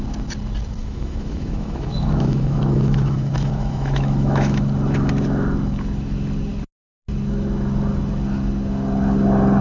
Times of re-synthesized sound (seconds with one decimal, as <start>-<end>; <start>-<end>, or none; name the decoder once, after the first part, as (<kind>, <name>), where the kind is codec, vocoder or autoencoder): 0.8-4.6 (autoencoder, DAC-VAE)